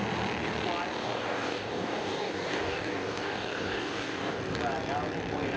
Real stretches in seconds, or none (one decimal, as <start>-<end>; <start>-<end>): 0.0-1.0; 4.4-5.6